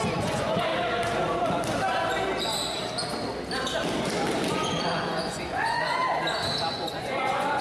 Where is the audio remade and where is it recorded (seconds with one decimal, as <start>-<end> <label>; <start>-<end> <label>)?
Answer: 0.0-0.7 remade; 0.7-4.5 recorded; 4.5-6.0 remade; 6.0-6.7 recorded; 6.7-7.6 remade